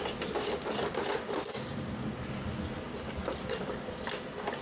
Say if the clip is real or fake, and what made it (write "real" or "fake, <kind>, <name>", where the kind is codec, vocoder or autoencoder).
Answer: real